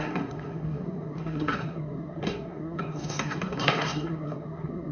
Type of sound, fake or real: fake